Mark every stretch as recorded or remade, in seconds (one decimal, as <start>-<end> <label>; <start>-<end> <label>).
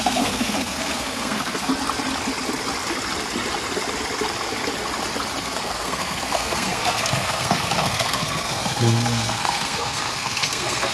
0.0-1.7 remade; 1.7-5.4 recorded; 5.4-10.9 remade